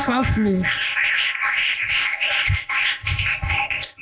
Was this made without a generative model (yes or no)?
no